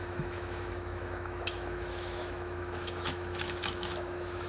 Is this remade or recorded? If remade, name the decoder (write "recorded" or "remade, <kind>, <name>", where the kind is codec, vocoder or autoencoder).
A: remade, autoencoder, DAC-VAE